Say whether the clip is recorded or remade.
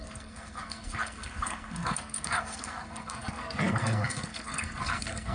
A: remade